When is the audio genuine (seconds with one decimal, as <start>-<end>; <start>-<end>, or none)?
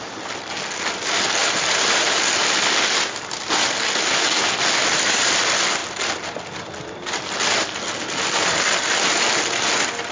0.0-10.1